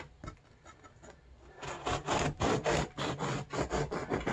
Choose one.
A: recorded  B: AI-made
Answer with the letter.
A